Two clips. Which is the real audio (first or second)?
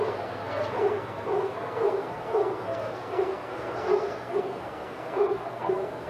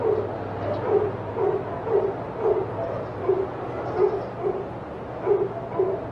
second